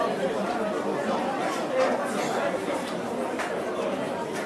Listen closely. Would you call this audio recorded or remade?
recorded